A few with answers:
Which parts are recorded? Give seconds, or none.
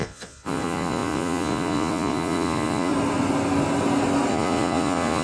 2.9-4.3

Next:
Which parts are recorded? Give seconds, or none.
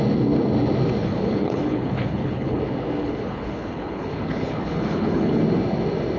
0.0-1.0; 2.6-3.0; 5.4-6.2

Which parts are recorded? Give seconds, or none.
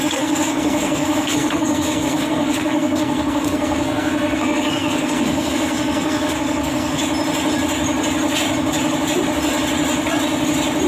7.0-10.9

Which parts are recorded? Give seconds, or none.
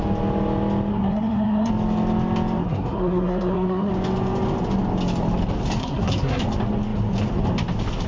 0.0-0.9; 1.7-2.6; 3.9-5.8; 6.4-8.1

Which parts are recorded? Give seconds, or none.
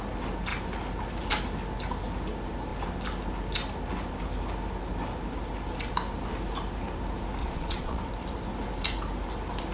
0.0-7.4; 8.0-9.7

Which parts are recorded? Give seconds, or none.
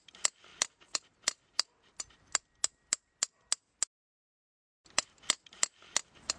0.0-6.4